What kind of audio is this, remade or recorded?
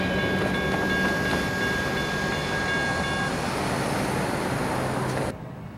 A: recorded